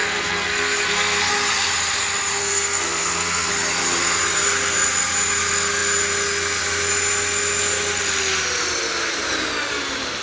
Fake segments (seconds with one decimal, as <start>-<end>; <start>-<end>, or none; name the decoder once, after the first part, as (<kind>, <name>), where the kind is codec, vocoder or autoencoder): 0.0-1.3 (codec, SNAC); 2.4-3.5